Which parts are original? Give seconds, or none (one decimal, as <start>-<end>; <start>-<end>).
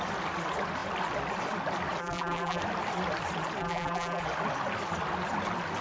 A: 0.0-2.0; 2.6-3.6; 4.2-5.8